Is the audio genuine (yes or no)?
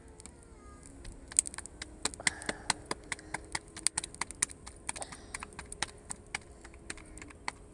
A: yes